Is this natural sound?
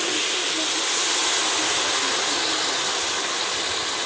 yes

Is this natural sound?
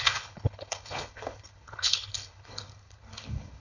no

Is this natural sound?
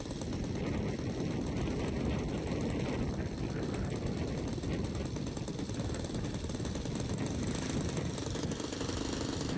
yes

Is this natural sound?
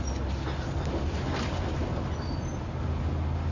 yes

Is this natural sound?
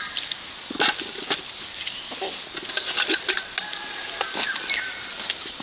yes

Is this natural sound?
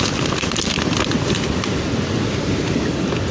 yes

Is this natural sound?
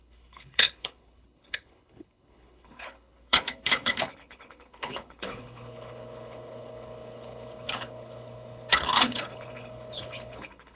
no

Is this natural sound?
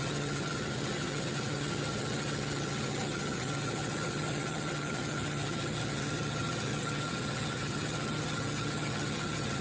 no